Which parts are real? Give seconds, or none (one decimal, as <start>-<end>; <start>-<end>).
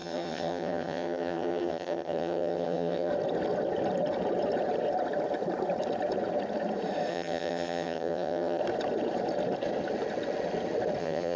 3.1-7.1; 8.6-11.0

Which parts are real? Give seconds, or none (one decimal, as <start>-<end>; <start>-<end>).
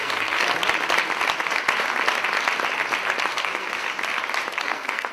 0.4-3.3; 3.9-4.6